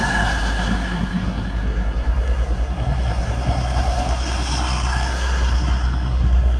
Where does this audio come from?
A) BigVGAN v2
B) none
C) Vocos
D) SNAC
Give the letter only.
D